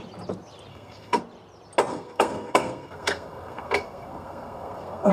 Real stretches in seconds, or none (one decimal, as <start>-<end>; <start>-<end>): 0.0-0.7; 1.2-1.9